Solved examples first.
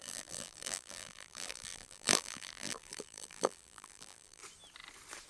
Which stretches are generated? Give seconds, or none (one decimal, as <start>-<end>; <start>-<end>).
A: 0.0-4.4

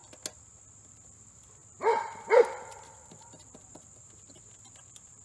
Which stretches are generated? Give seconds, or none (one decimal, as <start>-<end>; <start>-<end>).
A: 0.9-1.6; 2.3-5.2

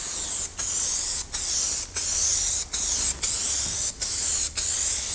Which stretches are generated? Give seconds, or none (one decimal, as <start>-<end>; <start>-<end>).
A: none

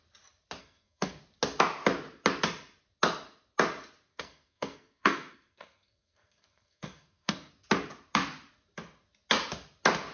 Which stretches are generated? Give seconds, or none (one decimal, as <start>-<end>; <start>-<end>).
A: 0.6-1.2; 4.1-7.5